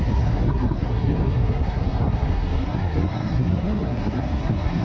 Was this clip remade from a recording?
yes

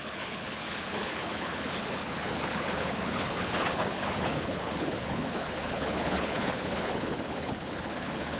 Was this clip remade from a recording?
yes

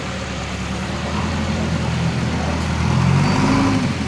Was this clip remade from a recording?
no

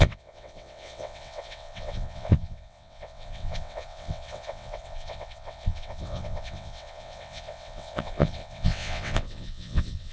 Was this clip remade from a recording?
yes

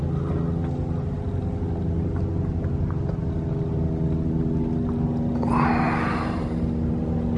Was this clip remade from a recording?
no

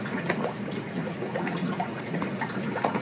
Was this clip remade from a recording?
yes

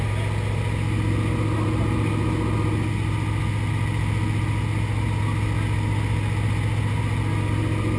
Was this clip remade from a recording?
no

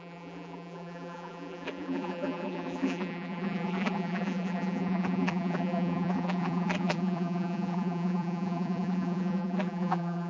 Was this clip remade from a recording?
yes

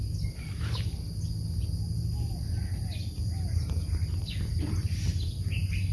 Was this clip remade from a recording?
no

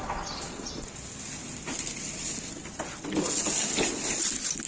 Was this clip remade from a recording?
no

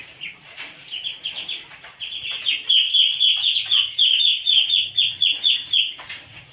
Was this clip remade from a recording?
yes